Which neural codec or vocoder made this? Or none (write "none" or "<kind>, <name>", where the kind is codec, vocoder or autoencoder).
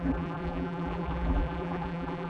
vocoder, BigVGAN v2